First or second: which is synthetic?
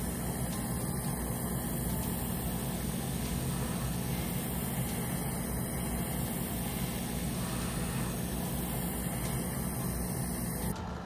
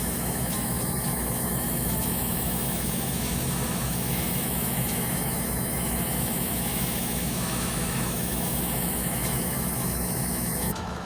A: second